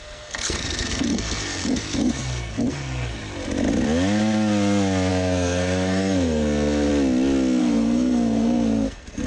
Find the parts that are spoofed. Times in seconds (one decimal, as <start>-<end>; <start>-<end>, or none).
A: 0.0-3.2; 5.1-6.9; 7.6-9.3